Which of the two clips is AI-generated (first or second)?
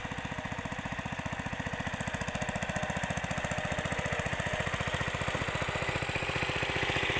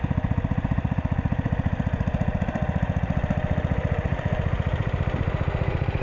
second